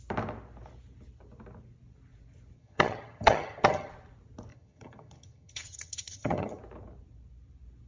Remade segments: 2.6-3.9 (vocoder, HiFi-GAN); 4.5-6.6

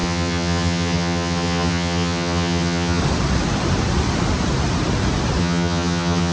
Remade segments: 0.0-3.0 (vocoder, HiFi-GAN); 5.4-6.3

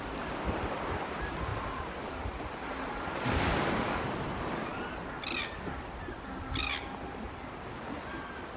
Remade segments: none

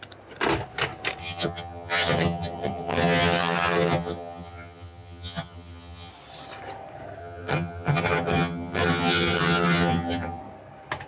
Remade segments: 1.2-6.1 (vocoder, HiFi-GAN); 7.2-10.4

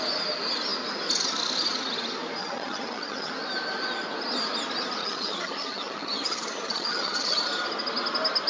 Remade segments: 2.4-3.3 (vocoder, HiFi-GAN); 5.0-7.4

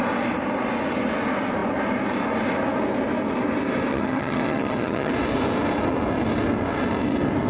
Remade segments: 3.9-5.1 (vocoder, HiFi-GAN)

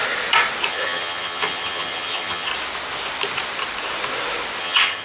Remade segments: 0.7-2.5 (vocoder, HiFi-GAN); 4.6-5.0